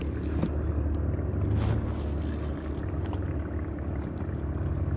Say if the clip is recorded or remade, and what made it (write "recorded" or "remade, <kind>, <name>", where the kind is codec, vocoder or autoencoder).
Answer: recorded